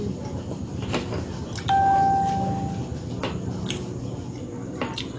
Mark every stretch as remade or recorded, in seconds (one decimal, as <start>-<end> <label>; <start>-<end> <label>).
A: 0.0-5.2 recorded